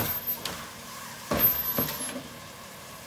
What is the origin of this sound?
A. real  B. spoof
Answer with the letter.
A